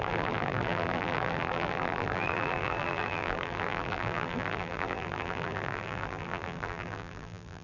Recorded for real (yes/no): no